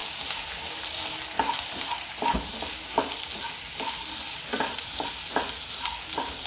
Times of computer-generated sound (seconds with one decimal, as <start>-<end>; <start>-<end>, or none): none